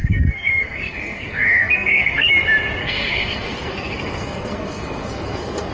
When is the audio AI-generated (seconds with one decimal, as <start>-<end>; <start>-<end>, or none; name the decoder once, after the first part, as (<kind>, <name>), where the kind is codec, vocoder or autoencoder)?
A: 0.0-2.3 (codec, SNAC); 2.8-5.7